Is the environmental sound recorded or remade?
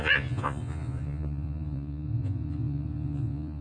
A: remade